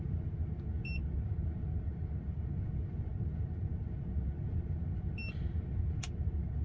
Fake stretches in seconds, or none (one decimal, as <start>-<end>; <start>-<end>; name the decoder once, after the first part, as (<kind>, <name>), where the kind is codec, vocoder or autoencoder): none